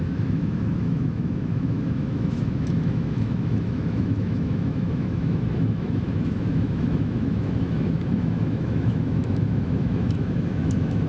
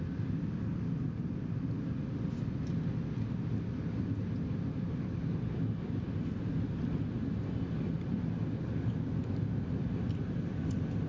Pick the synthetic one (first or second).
first